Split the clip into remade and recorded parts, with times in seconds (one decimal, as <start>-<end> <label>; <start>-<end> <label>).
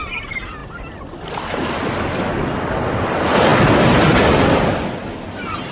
0.0-5.7 recorded